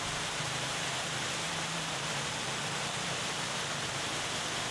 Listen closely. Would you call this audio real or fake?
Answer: fake